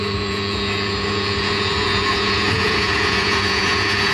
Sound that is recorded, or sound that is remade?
remade